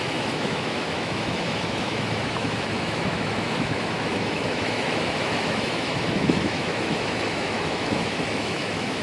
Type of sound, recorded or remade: remade